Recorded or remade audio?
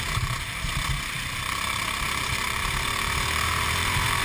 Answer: remade